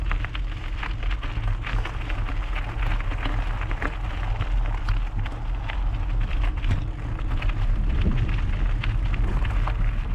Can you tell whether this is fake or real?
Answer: real